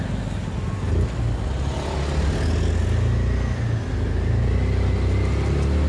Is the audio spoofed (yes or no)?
no